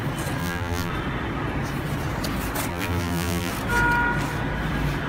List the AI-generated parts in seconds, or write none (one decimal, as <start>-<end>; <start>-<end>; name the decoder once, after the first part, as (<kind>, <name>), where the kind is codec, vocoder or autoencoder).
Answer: 0.4-0.9 (vocoder, BigVGAN v2); 2.7-3.5